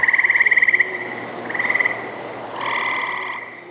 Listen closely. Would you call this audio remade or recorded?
recorded